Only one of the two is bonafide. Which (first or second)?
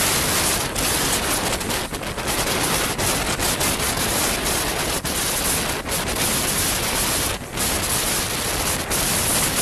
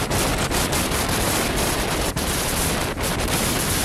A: first